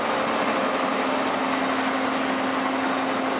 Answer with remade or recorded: recorded